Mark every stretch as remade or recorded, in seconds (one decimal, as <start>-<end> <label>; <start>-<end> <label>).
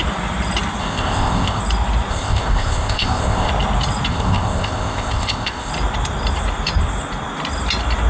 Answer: 0.0-0.8 recorded; 0.8-1.6 remade; 1.6-2.1 recorded; 2.1-3.5 remade; 3.5-4.1 recorded; 4.1-5.7 remade; 5.7-8.1 recorded